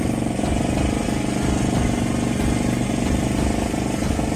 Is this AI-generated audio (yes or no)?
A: no